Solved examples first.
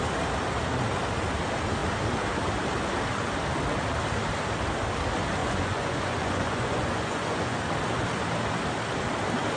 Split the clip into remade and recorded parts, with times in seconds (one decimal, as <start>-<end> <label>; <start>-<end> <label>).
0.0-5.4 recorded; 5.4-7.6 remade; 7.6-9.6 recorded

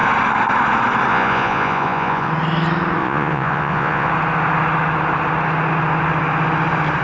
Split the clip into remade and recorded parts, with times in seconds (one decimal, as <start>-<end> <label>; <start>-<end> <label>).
0.0-1.1 recorded; 1.1-2.3 remade; 2.3-3.0 recorded; 3.0-4.1 remade; 4.1-7.0 recorded

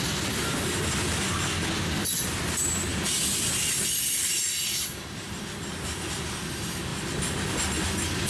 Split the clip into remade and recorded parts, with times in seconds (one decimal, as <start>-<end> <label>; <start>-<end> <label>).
0.0-8.3 recorded

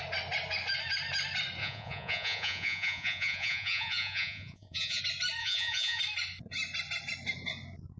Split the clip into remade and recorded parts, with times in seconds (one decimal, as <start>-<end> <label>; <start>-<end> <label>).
0.0-1.6 recorded; 1.6-5.0 remade; 5.0-5.4 recorded; 5.4-6.0 remade; 6.0-8.0 recorded

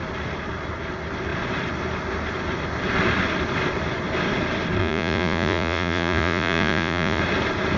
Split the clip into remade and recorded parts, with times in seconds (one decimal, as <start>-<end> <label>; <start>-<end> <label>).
0.0-4.8 recorded; 4.8-7.2 remade; 7.2-7.8 recorded

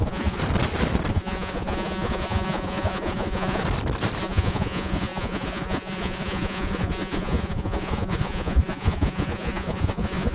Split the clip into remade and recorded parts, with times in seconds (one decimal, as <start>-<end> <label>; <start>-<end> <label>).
0.0-0.4 remade; 0.4-1.1 recorded; 1.1-3.6 remade; 3.6-4.2 recorded; 4.2-10.3 remade

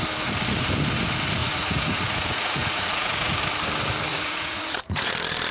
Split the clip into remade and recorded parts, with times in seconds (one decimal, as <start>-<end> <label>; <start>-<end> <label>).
0.0-1.4 recorded; 1.4-3.4 remade; 3.4-4.1 recorded; 4.1-5.1 remade; 5.1-5.5 recorded